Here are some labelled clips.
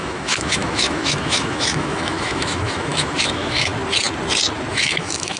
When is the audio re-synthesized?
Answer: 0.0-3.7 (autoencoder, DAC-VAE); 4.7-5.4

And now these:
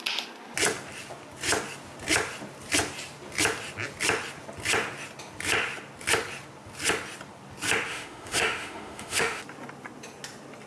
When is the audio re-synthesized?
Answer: 7.9-9.4 (autoencoder, DAC-VAE)

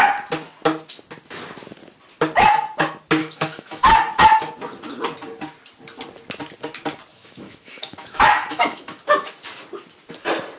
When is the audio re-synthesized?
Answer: 3.2-4.0 (autoencoder, DAC-VAE); 7.1-9.0

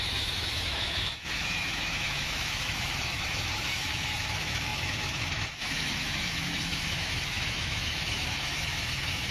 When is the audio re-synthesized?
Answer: 0.0-9.3 (autoencoder, DAC-VAE)